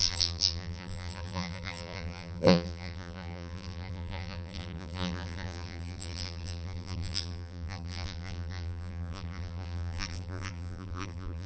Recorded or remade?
remade